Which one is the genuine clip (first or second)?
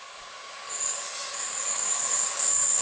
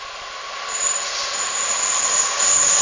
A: second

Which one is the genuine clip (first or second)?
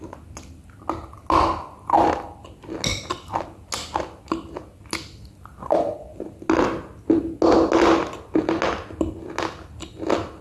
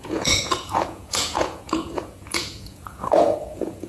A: first